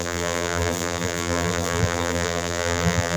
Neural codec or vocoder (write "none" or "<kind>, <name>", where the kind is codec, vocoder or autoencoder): vocoder, BigVGAN v2